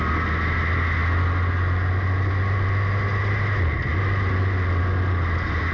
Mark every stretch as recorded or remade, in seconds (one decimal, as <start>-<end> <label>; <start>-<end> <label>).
0.0-5.7 recorded